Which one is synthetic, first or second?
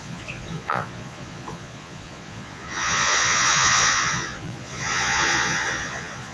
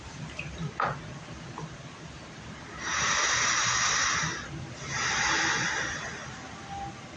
first